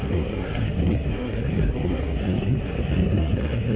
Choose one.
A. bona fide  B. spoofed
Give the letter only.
B